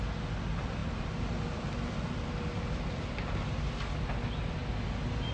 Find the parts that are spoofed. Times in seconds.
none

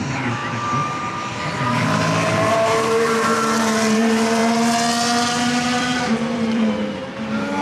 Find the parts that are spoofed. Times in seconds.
0.0-0.4 (vocoder, BigVGAN v2); 2.5-4.4; 5.8-7.6

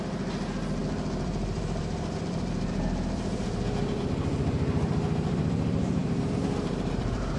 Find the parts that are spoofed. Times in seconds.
0.8-4.9 (vocoder, BigVGAN v2); 6.0-7.4

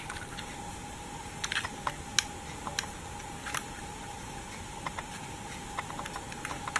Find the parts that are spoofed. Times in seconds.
0.8-1.8 (vocoder, BigVGAN v2); 3.4-5.9

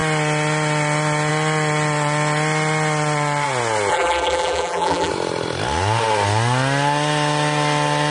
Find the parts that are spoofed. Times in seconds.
3.9-5.1 (vocoder, BigVGAN v2)

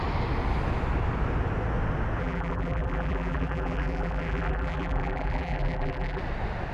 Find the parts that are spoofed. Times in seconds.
2.2-6.2 (vocoder, BigVGAN v2)

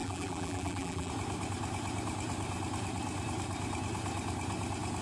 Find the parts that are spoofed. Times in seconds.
0.0-1.1 (vocoder, BigVGAN v2)